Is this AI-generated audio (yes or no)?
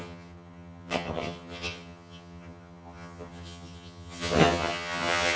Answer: yes